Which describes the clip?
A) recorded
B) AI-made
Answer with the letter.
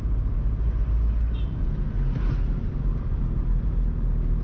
A